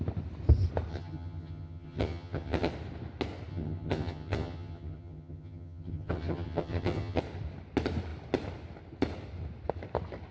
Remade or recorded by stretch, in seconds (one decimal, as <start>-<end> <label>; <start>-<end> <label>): 0.0-0.9 recorded; 0.9-2.7 remade; 2.7-3.5 recorded; 3.5-7.2 remade; 7.2-10.3 recorded